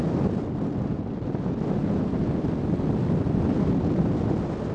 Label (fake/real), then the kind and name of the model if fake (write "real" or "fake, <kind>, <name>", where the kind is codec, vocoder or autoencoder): real